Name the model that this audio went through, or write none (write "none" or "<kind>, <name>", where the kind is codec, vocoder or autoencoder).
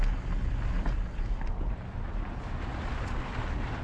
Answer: none